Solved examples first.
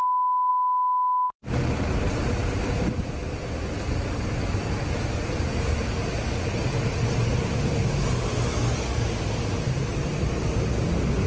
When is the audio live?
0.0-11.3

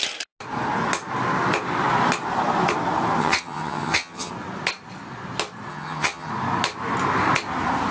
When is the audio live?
0.0-3.2; 4.3-5.7; 6.3-7.9

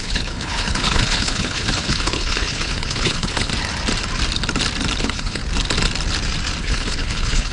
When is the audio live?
3.5-5.0; 5.4-6.6

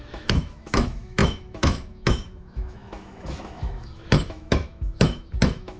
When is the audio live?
none

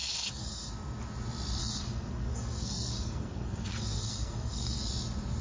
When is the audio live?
0.7-1.6; 4.8-5.4

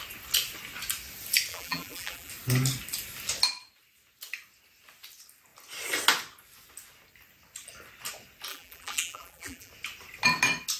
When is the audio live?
0.0-1.5; 2.3-8.5; 9.7-10.8